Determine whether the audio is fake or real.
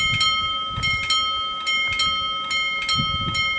real